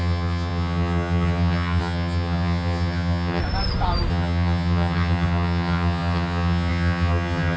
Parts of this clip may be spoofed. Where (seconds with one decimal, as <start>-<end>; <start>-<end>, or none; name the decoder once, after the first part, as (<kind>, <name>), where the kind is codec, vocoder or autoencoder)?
0.0-3.4 (vocoder, HiFi-GAN); 4.1-7.6